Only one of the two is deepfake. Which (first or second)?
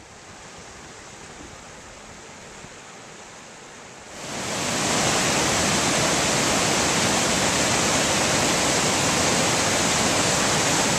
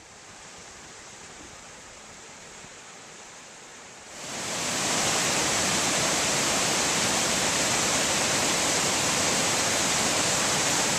second